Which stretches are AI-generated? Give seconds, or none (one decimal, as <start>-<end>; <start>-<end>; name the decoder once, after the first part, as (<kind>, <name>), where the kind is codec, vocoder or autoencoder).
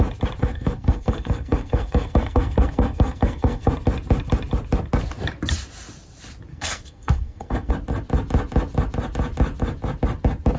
0.4-3.7 (codec, SNAC); 6.5-7.7